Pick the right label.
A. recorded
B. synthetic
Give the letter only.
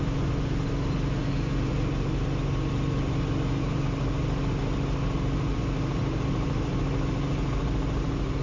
A